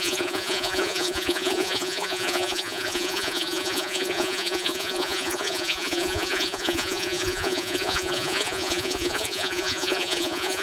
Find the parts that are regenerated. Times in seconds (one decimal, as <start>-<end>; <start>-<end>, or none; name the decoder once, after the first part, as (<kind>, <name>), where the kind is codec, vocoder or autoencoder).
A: 0.0-10.6 (vocoder, Vocos)